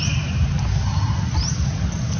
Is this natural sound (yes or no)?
yes